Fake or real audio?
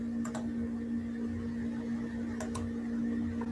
real